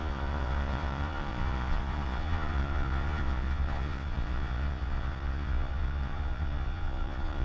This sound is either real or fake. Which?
fake